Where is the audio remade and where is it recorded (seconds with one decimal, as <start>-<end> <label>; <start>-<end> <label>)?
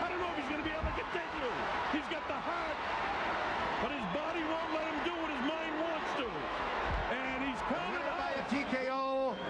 0.0-1.7 remade; 1.7-6.0 recorded; 6.0-7.0 remade; 7.0-8.4 recorded; 8.4-9.5 remade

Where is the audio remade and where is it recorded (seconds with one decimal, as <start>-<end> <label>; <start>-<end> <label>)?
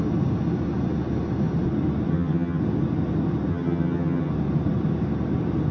0.0-2.1 recorded; 2.1-2.6 remade; 2.6-3.5 recorded; 3.5-4.3 remade; 4.3-5.7 recorded